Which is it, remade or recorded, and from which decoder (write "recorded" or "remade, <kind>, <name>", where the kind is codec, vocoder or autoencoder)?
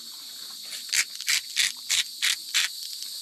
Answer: recorded